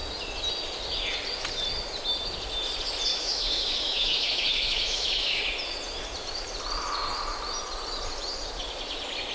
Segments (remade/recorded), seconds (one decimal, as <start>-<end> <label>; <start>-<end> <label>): 0.0-3.1 recorded; 3.1-5.4 remade; 5.4-9.3 recorded